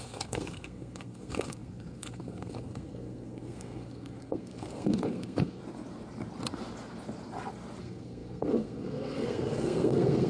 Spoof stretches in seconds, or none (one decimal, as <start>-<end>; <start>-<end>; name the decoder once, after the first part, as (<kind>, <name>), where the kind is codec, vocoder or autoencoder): 0.0-5.6 (codec, SNAC); 7.8-10.3